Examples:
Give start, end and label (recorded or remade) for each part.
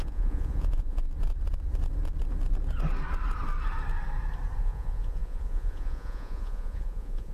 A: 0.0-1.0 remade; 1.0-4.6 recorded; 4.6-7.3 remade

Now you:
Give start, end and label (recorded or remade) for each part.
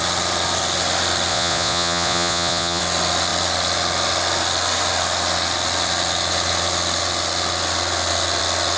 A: 0.0-1.3 recorded; 1.3-2.8 remade; 2.8-8.8 recorded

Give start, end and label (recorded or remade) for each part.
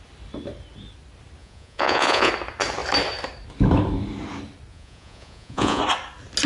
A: 0.0-1.4 recorded; 1.4-2.3 remade; 2.3-4.7 recorded; 4.7-5.8 remade; 5.8-6.5 recorded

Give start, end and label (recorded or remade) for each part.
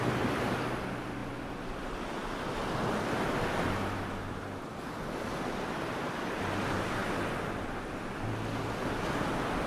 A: 0.0-9.7 recorded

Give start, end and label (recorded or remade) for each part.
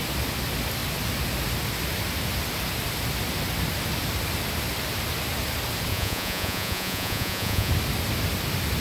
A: 0.0-5.9 recorded; 5.9-7.7 remade; 7.7-8.8 recorded